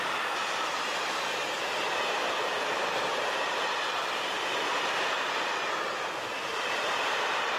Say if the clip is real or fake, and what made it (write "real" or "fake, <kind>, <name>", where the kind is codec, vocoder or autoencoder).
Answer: real